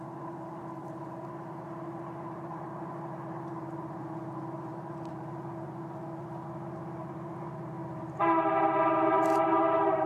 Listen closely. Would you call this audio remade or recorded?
remade